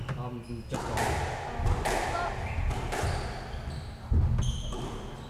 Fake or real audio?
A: real